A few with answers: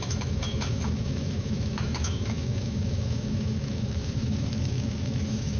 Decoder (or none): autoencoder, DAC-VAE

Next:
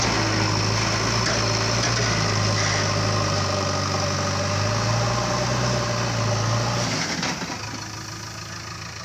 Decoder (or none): none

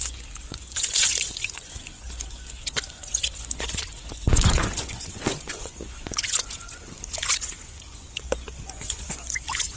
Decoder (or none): vocoder, Vocos